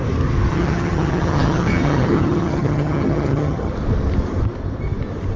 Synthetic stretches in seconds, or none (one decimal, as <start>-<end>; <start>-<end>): 0.5-3.7